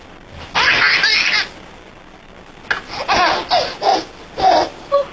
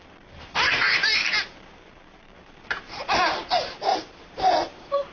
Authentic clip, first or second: first